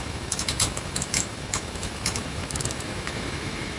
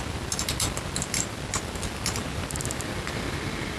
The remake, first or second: first